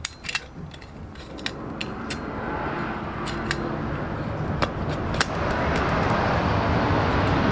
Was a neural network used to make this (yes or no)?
no